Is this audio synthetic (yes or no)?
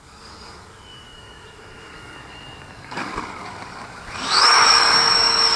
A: yes